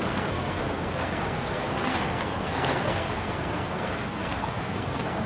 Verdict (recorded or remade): remade